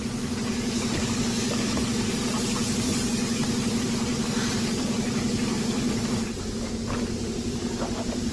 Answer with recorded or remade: remade